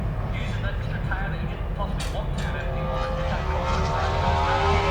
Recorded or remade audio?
recorded